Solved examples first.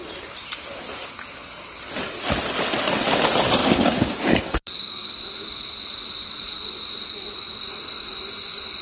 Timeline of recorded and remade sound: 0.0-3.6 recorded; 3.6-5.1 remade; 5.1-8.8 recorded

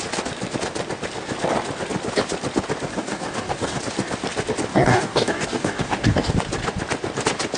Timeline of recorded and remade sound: 0.0-2.9 recorded; 2.9-3.8 remade; 3.8-4.7 recorded; 4.7-6.3 remade; 6.3-7.6 recorded

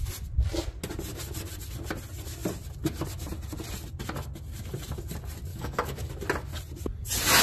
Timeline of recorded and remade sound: 0.0-5.5 recorded; 5.5-6.1 remade; 6.1-7.4 recorded

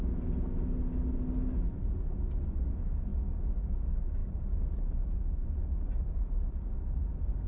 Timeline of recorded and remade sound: 0.0-7.5 recorded

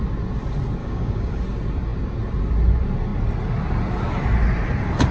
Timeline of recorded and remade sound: 0.0-0.8 recorded; 0.8-1.4 remade; 1.4-5.1 recorded